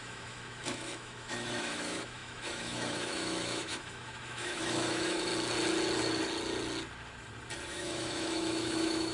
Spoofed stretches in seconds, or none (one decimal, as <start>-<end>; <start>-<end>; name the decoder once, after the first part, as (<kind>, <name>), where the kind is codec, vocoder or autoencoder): 0.0-5.3 (autoencoder, DAC-VAE); 7.7-9.1